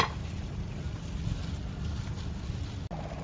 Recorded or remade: recorded